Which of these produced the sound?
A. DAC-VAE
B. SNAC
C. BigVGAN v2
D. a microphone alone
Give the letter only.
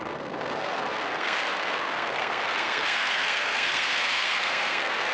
B